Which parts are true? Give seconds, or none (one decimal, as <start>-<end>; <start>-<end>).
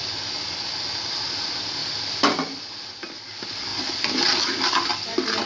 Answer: 0.0-1.8; 2.9-5.5